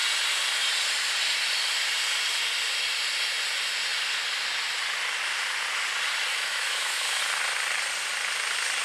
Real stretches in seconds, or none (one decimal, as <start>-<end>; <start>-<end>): 0.0-6.3; 7.2-8.8